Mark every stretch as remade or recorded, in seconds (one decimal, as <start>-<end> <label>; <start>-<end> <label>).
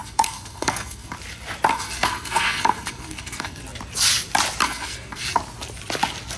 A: 0.0-1.1 remade; 1.1-1.7 recorded; 1.7-3.6 remade; 3.6-4.6 recorded; 4.6-5.4 remade; 5.4-6.4 recorded